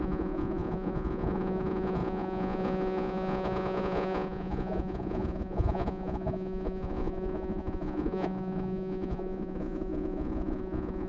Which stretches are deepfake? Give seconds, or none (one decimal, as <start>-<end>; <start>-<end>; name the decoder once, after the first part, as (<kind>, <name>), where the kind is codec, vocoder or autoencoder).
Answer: 0.0-11.1 (vocoder, Vocos)